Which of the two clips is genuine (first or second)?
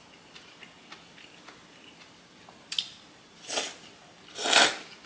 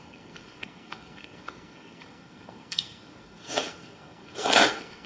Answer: first